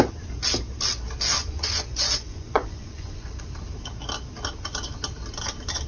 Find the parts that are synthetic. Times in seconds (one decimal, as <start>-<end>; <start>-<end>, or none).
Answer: 1.4-3.4